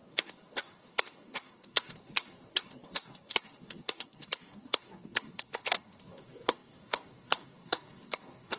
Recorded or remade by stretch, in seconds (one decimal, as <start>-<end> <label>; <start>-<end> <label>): 0.0-8.6 remade